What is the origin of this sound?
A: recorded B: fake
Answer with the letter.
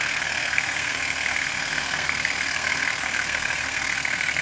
B